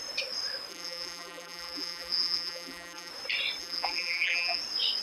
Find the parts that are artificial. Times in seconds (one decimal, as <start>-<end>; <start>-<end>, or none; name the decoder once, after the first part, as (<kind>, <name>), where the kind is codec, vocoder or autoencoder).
0.7-3.1 (vocoder, BigVGAN v2); 3.6-4.6